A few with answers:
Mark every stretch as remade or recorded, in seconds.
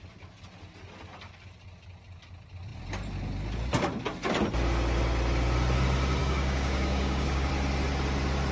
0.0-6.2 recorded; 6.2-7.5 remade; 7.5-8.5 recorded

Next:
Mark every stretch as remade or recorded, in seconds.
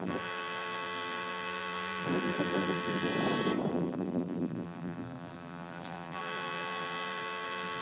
0.0-3.1 remade; 3.1-3.7 recorded; 3.7-7.8 remade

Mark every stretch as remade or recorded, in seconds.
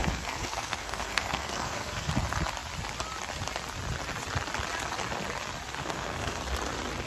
0.0-2.1 remade; 2.1-5.8 recorded; 5.8-6.4 remade; 6.4-7.1 recorded